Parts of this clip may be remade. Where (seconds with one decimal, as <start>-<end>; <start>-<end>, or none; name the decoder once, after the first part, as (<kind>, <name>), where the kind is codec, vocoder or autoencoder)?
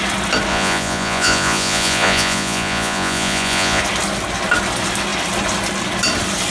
0.5-3.8 (vocoder, Vocos)